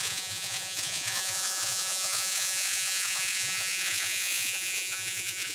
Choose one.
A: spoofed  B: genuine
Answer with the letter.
A